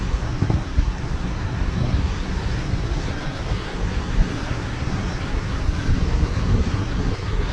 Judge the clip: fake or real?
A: fake